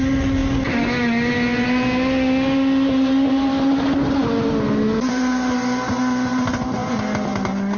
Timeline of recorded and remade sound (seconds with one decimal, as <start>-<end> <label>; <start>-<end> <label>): 0.0-7.8 recorded